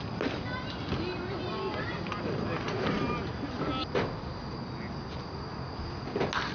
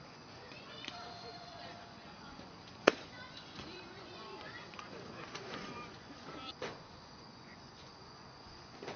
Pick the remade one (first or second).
second